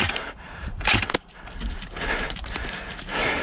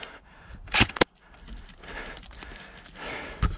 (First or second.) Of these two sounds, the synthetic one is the first